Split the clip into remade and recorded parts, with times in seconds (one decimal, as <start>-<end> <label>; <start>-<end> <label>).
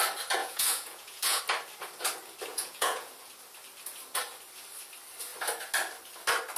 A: 0.0-0.4 recorded; 0.4-1.4 remade; 1.4-2.5 recorded; 2.5-3.1 remade; 3.1-6.6 recorded